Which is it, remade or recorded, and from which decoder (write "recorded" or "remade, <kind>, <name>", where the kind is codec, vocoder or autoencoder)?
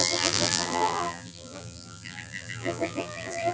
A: remade, vocoder, BigVGAN v2